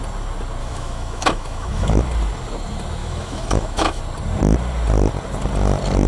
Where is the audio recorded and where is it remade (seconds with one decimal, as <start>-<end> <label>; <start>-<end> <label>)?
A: 0.0-0.6 recorded; 0.6-1.9 remade; 1.9-3.0 recorded; 3.0-4.0 remade; 4.0-6.1 recorded